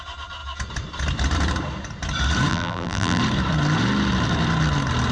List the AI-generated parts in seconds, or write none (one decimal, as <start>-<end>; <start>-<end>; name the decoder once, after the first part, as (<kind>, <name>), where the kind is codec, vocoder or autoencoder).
2.5-3.2 (vocoder, BigVGAN v2)